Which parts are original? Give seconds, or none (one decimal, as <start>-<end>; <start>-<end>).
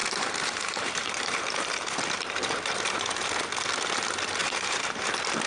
3.3-4.4; 5.1-5.5